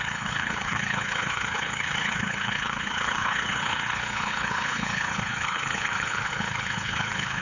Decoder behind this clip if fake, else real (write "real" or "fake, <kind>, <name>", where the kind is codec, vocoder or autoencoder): fake, codec, HILCodec